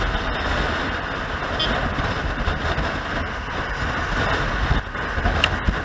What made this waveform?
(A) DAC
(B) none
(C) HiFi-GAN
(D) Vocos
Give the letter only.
B